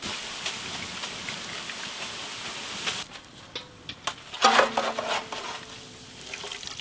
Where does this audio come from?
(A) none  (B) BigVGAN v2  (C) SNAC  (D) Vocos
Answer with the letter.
A